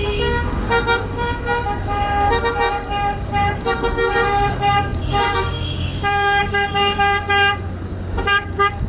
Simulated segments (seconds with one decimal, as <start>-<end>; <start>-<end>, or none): 0.0-8.9

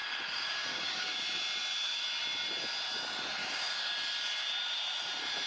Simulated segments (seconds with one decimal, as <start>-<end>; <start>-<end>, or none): 0.0-1.2; 3.4-3.9